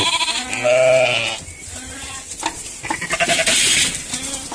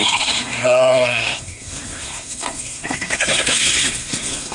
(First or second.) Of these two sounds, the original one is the first